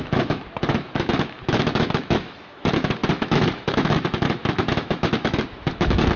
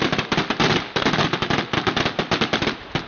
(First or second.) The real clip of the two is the second